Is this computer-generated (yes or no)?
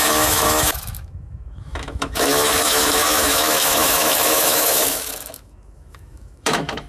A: yes